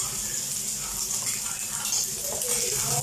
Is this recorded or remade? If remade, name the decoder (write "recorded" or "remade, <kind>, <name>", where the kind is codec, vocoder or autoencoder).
recorded